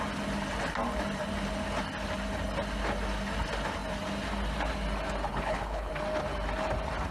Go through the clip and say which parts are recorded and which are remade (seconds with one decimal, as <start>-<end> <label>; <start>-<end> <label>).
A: 0.0-5.3 recorded; 5.3-5.9 remade; 5.9-7.1 recorded

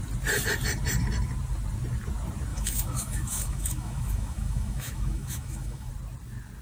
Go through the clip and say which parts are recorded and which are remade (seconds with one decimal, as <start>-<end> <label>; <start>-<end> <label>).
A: 0.0-2.5 recorded; 2.5-5.9 remade; 5.9-6.6 recorded

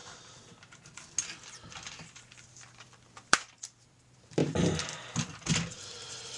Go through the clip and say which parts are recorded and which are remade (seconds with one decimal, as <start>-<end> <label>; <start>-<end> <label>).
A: 0.0-1.7 recorded; 1.7-6.4 remade

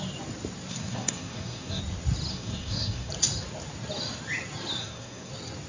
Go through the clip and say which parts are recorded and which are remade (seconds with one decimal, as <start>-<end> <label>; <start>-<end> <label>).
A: 0.0-0.7 recorded; 0.7-1.8 remade; 1.8-2.3 recorded; 2.3-3.1 remade; 3.1-4.8 recorded; 4.8-5.3 remade; 5.3-5.7 recorded